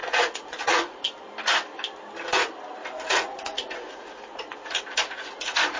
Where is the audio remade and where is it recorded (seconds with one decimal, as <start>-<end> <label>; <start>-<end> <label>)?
0.0-1.0 remade; 1.0-2.8 recorded; 2.8-5.8 remade